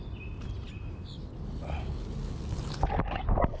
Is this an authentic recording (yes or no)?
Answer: yes